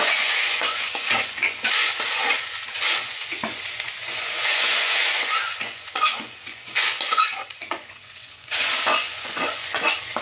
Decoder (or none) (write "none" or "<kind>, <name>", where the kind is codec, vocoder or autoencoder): vocoder, Vocos